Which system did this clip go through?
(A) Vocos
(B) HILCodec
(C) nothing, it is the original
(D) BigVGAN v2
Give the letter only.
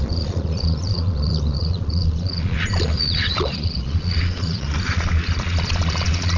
A